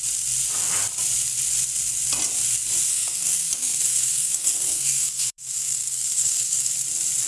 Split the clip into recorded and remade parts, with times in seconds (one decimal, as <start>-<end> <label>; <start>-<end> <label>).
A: 0.0-2.9 recorded; 2.9-6.7 remade; 6.7-7.3 recorded